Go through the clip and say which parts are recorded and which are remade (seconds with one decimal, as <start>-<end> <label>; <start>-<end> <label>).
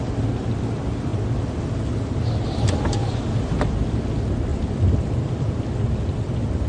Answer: 0.0-4.5 recorded; 4.5-5.7 remade; 5.7-6.7 recorded